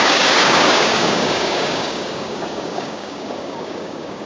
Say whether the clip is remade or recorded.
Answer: remade